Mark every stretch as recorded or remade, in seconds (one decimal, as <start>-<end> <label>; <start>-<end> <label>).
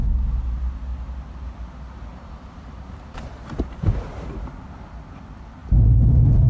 0.0-2.1 recorded; 2.1-4.5 remade; 4.5-5.6 recorded; 5.6-6.5 remade